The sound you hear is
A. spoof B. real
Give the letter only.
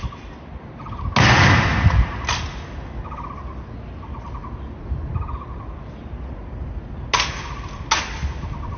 B